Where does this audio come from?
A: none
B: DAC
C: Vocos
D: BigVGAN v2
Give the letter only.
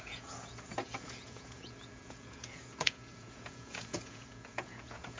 C